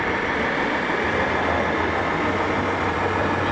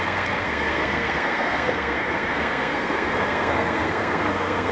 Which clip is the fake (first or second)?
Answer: second